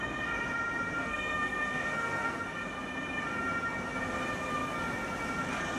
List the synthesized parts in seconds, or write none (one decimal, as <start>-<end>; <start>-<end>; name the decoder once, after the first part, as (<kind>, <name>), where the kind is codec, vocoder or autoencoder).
1.0-2.4 (codec, SNAC)